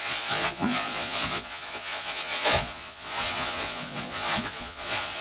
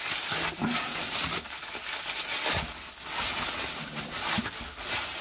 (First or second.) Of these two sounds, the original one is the second